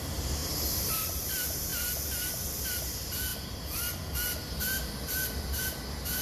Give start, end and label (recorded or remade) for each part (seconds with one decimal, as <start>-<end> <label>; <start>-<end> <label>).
0.0-6.2 recorded